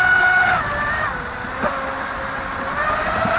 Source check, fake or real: real